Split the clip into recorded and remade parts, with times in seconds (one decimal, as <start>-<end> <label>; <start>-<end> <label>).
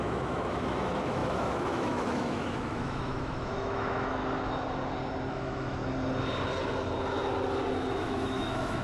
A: 0.0-4.2 remade; 4.2-5.3 recorded; 5.3-5.8 remade; 5.8-7.9 recorded; 7.9-8.8 remade